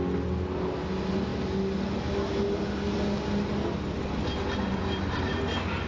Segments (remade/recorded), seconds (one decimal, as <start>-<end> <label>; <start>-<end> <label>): 0.0-5.9 recorded